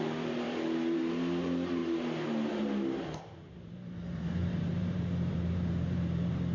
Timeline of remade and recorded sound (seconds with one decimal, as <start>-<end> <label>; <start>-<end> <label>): 0.0-1.8 remade; 1.8-3.0 recorded; 3.0-6.5 remade